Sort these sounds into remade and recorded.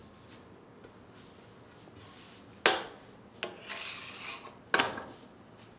recorded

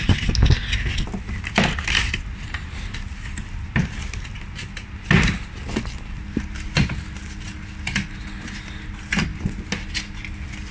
recorded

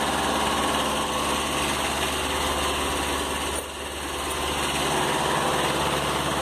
recorded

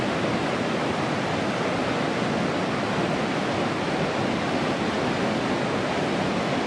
recorded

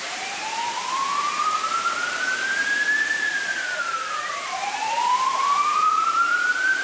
remade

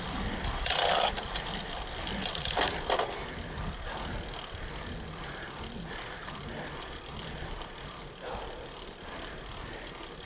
recorded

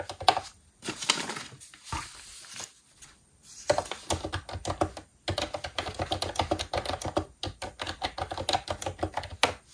recorded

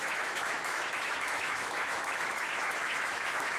remade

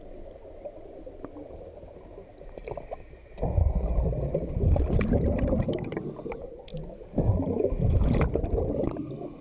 recorded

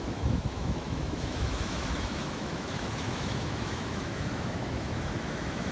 remade